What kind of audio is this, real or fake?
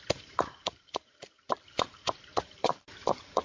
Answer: fake